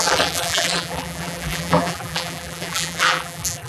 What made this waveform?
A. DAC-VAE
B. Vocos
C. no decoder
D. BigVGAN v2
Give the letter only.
D